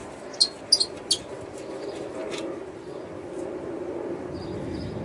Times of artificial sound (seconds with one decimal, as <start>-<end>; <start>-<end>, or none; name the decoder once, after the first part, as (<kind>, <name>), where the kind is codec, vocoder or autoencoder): none